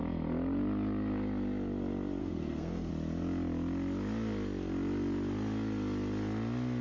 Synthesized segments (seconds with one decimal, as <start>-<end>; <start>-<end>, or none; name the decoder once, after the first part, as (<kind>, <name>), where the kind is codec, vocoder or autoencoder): 2.2-2.9 (codec, SNAC)